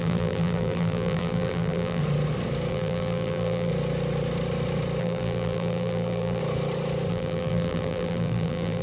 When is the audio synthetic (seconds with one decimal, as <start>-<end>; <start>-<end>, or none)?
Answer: 0.0-2.0; 2.7-3.7; 5.0-6.4; 7.1-8.8